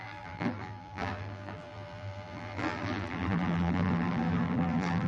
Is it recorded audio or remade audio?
remade